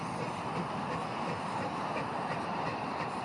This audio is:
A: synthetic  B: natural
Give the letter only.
B